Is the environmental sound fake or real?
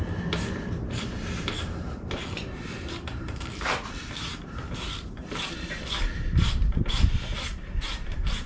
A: fake